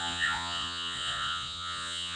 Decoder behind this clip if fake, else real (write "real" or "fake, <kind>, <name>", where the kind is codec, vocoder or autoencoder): fake, vocoder, Vocos